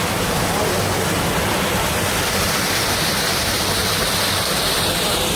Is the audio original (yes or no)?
yes